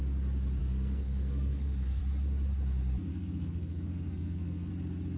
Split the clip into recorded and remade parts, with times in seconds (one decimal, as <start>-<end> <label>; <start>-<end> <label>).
0.0-0.6 recorded; 0.6-2.0 remade; 2.0-3.1 recorded; 3.1-4.7 remade; 4.7-5.2 recorded